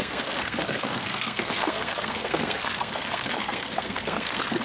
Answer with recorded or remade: remade